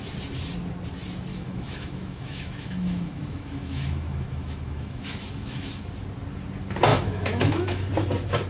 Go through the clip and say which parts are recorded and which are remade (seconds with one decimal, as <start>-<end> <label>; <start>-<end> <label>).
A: 0.0-1.3 recorded; 1.3-5.8 remade; 5.8-6.9 recorded; 6.9-7.9 remade; 7.9-8.5 recorded